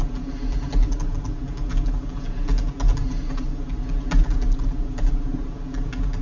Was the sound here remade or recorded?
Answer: recorded